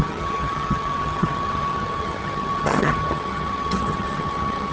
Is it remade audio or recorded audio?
remade